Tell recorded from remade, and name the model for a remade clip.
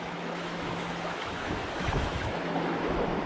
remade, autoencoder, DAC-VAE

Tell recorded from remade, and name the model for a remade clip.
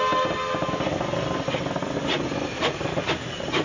recorded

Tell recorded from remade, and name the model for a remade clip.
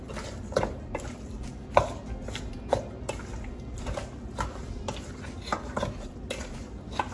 recorded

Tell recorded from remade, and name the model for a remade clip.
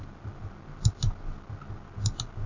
recorded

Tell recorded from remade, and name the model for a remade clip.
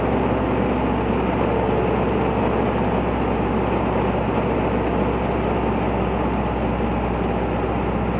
recorded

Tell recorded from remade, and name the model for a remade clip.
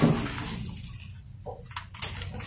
recorded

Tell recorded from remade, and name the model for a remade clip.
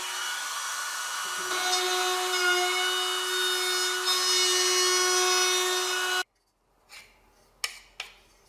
recorded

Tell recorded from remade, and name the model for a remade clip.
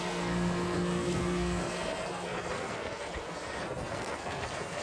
remade, codec, SNAC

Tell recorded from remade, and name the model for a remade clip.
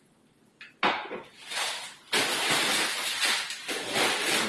recorded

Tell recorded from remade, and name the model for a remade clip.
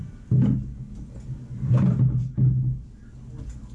recorded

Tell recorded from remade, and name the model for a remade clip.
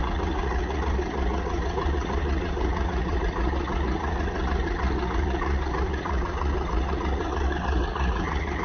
remade, vocoder, Vocos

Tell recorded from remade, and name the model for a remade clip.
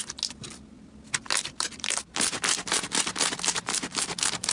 recorded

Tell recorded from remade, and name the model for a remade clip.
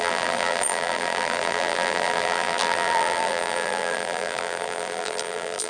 remade, vocoder, BigVGAN v2